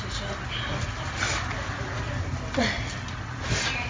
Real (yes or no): yes